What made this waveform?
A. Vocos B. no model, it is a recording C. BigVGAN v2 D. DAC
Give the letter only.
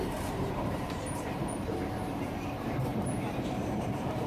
C